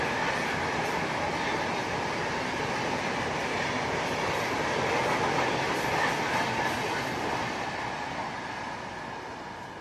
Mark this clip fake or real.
real